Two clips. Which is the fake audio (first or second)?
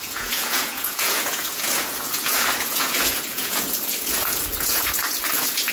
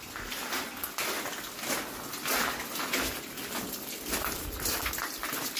first